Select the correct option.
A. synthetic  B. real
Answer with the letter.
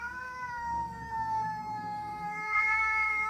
A